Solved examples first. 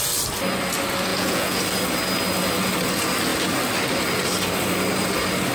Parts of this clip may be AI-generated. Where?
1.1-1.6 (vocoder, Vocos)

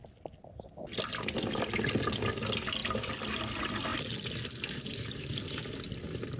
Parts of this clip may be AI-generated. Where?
none

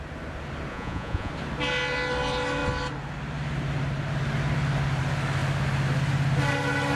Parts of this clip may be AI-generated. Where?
0.7-1.3 (vocoder, Vocos)

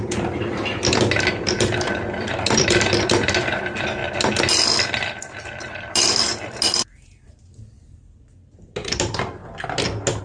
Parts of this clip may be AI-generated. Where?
0.0-4.0 (vocoder, BigVGAN v2); 5.2-9.4

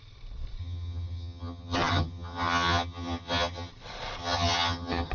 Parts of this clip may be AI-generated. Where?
0.6-3.7 (vocoder, HiFi-GAN); 4.2-5.1

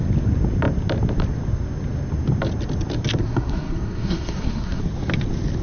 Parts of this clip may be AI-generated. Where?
3.2-4.8 (codec, SNAC)

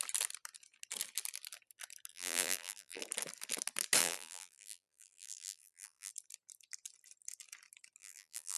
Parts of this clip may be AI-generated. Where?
2.1-3.0 (vocoder, BigVGAN v2); 4.0-6.1; 8.0-8.6

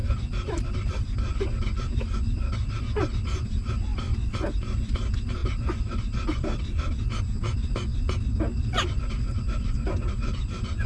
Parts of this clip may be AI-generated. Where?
0.0-0.9 (vocoder, BigVGAN v2); 3.9-4.4; 5.4-7.2; 7.9-9.0